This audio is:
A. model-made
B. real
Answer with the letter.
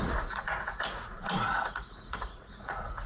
A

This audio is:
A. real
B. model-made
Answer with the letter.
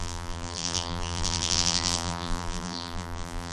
B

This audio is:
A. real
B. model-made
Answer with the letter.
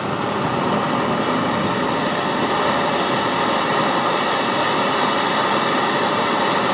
A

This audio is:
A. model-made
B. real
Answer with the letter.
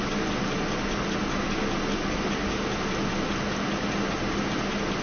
B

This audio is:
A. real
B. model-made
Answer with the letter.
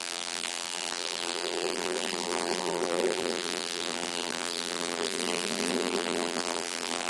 B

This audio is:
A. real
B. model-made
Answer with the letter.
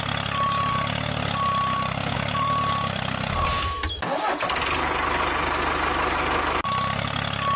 A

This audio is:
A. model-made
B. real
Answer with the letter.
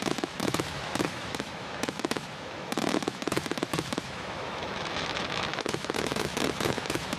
A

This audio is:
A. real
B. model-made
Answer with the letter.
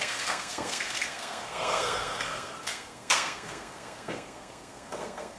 B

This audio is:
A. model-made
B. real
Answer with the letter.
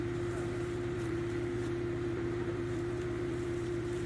A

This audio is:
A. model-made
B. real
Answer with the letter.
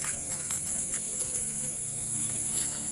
A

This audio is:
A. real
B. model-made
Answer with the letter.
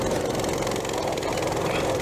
A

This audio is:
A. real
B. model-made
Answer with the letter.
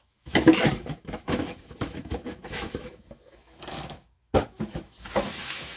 B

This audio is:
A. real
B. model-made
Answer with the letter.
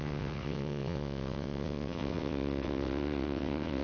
B